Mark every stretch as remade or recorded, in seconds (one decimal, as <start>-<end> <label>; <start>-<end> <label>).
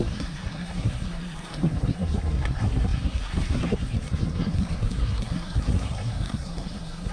0.0-7.1 remade